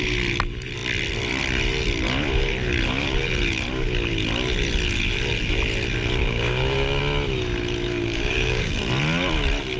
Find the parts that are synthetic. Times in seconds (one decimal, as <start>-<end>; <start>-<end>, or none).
6.2-7.0; 7.9-8.7